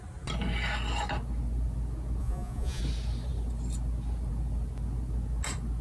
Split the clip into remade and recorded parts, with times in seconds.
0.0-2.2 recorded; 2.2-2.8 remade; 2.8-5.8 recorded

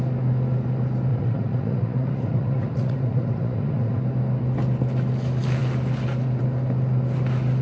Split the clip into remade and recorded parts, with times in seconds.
0.0-1.1 recorded; 1.1-4.0 remade; 4.0-7.6 recorded

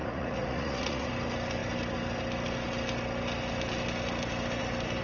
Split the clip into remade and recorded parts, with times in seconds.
0.0-1.1 remade; 1.1-5.0 recorded

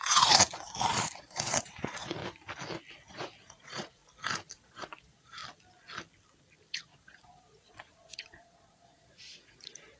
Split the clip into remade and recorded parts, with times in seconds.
0.0-2.2 remade; 2.2-3.1 recorded; 3.1-4.0 remade; 4.0-4.6 recorded; 4.6-5.4 remade; 5.4-6.7 recorded; 6.7-10.0 remade

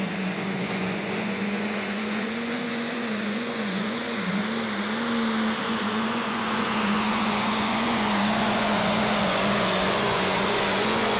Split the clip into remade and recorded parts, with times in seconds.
0.0-4.4 remade; 4.4-5.6 recorded; 5.6-11.2 remade